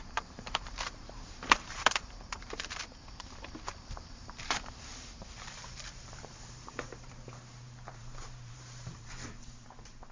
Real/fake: fake